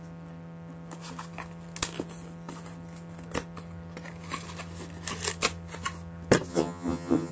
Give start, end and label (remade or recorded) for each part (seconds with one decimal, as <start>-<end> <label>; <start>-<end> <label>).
0.0-6.5 recorded; 6.5-7.3 remade